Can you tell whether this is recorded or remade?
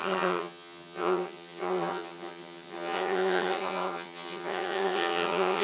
remade